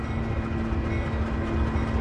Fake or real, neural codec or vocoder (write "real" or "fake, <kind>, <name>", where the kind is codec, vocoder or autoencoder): real